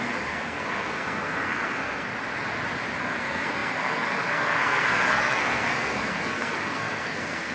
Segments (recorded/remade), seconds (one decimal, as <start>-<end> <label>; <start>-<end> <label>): 0.0-2.1 remade; 2.1-3.0 recorded; 3.0-7.5 remade